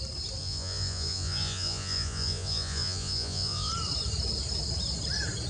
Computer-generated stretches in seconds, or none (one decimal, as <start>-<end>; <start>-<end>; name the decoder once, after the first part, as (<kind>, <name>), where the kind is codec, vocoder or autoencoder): 0.4-3.7 (vocoder, Vocos)

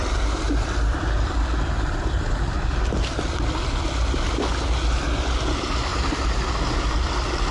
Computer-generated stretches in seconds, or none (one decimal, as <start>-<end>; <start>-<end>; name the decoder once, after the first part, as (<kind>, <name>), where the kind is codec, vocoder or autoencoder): 0.0-4.5 (vocoder, BigVGAN v2); 5.9-6.5

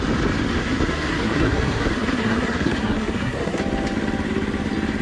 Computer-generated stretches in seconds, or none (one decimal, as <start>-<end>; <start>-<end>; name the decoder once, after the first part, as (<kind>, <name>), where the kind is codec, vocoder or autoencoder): 0.6-3.6 (codec, SNAC)

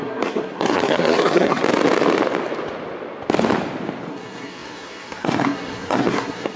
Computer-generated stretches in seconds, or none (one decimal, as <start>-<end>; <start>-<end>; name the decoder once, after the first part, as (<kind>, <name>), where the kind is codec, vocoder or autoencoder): 0.0-1.6 (codec, SNAC); 4.1-6.6

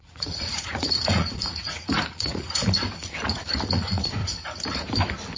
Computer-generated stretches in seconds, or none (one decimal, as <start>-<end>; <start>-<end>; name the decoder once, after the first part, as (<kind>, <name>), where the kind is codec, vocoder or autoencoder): 0.0-2.6 (vocoder, Vocos); 3.7-4.2